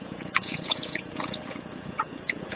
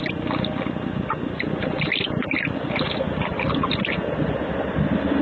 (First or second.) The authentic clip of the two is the second